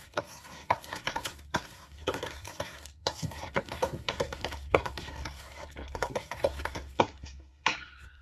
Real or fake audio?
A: fake